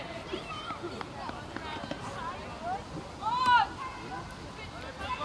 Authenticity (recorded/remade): recorded